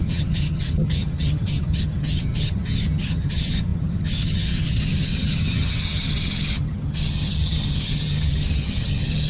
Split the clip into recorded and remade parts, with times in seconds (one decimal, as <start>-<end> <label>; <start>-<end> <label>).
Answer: 0.0-9.3 remade